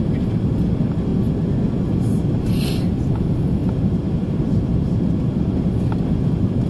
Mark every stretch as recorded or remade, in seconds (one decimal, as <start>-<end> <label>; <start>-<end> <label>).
0.0-6.7 recorded